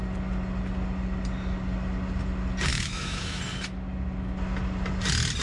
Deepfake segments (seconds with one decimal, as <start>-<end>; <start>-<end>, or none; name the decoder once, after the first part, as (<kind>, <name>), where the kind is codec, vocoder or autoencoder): 2.7-3.4 (autoencoder, DAC-VAE)